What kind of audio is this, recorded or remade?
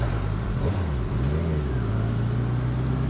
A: recorded